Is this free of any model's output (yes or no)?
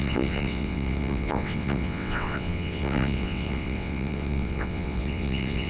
no